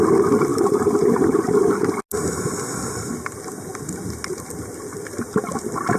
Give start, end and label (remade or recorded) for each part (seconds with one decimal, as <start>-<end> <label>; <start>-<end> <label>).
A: 0.0-6.0 recorded